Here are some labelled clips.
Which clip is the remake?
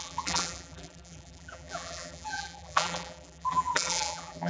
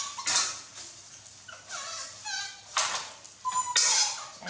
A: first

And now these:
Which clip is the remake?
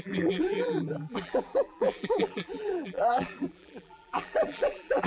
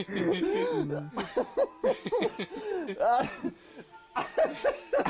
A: first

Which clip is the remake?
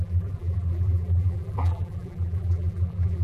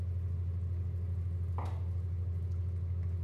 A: first